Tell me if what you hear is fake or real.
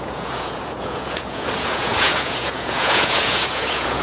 fake